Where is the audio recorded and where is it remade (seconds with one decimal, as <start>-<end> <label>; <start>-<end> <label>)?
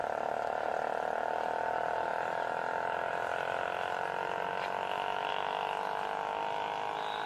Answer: 0.0-0.7 remade; 0.7-7.3 recorded